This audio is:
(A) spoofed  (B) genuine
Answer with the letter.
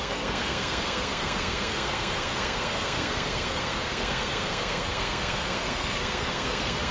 A